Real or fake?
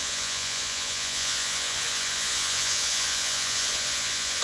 fake